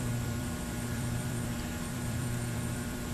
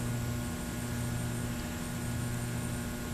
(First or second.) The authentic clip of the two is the second